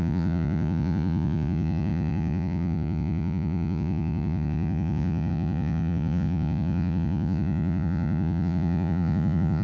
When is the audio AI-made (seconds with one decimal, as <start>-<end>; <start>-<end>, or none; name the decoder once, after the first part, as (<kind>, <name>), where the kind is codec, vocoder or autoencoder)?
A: 0.0-9.6 (vocoder, Vocos)